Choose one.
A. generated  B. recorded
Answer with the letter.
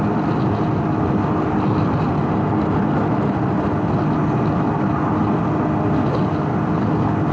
B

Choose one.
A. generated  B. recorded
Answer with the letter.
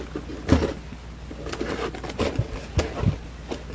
B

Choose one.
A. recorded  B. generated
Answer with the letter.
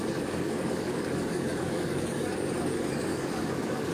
B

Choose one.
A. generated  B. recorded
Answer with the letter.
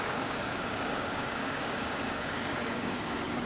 A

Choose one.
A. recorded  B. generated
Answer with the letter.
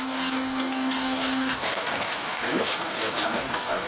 B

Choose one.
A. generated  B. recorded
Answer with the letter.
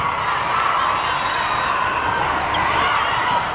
B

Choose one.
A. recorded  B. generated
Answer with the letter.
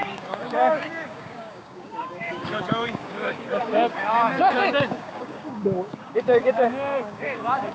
B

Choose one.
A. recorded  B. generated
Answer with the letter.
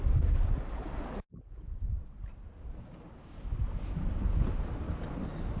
A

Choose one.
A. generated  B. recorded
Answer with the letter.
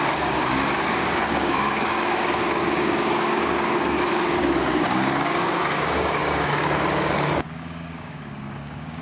A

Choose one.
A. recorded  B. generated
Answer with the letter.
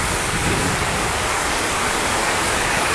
B